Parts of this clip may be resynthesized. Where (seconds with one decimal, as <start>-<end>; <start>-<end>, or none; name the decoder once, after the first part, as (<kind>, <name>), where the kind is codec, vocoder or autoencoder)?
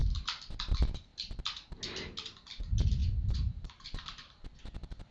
3.0-4.6 (vocoder, BigVGAN v2)